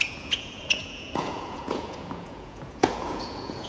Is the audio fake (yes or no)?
yes